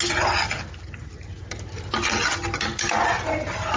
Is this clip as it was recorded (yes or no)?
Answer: yes